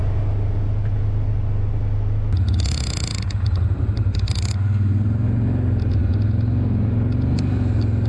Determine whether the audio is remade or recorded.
recorded